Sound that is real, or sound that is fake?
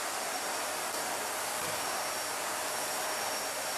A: fake